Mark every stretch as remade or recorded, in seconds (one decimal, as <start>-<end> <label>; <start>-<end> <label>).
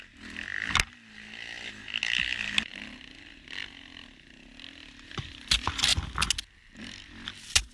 0.0-7.7 recorded